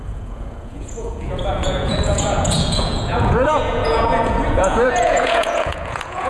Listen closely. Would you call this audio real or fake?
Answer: fake